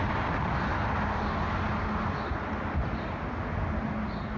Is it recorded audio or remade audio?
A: recorded